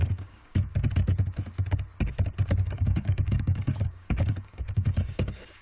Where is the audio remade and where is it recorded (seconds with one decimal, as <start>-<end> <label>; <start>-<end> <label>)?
0.0-0.7 remade; 0.7-2.6 recorded; 2.6-5.6 remade